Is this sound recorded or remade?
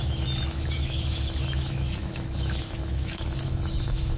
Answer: remade